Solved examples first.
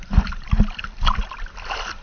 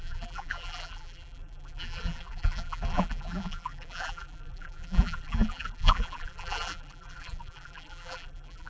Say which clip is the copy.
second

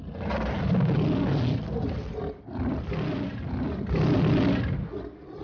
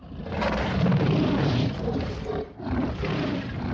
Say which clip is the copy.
second